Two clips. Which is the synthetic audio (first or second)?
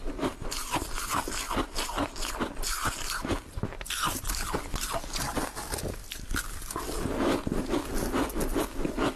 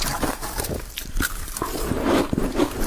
second